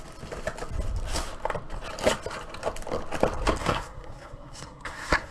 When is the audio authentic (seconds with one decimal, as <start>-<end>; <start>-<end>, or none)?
0.0-3.6